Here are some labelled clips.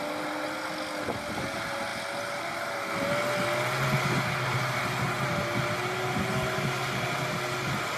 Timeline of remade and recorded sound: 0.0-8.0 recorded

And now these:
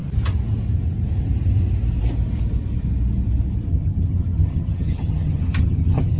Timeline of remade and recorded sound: 0.0-3.7 recorded; 3.7-6.2 remade

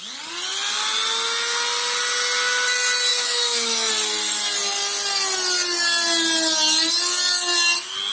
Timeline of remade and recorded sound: 0.0-3.1 recorded; 3.1-3.9 remade; 3.9-8.1 recorded

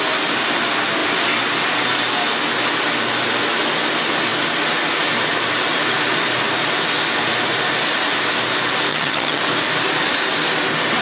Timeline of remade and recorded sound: 0.0-8.9 recorded; 8.9-9.4 remade; 9.4-11.0 recorded

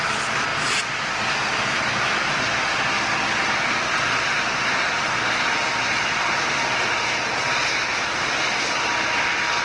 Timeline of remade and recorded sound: 0.0-9.6 recorded

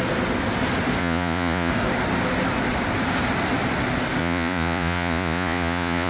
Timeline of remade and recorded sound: 0.0-1.0 recorded; 1.0-1.7 remade; 1.7-4.2 recorded; 4.2-6.1 remade

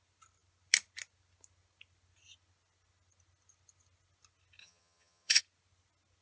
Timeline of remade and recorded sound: 0.0-4.6 recorded; 4.6-5.4 remade; 5.4-6.2 recorded